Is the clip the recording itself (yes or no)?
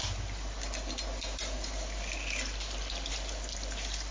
yes